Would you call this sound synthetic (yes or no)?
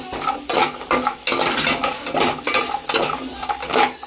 no